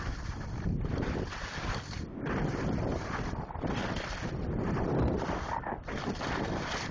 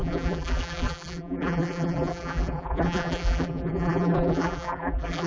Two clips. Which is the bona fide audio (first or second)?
first